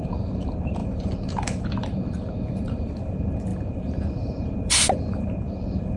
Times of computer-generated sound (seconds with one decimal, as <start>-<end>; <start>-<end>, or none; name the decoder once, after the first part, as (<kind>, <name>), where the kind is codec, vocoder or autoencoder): 0.0-6.0 (vocoder, BigVGAN v2)

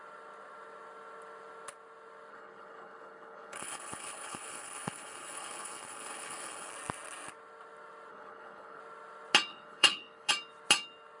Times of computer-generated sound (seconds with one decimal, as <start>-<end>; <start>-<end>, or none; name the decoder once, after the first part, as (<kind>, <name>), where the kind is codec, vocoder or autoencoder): 2.3-6.7 (codec, HILCodec); 8.1-8.8; 9.5-10.3